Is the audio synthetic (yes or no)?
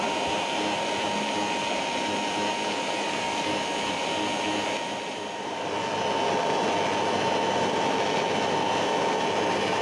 no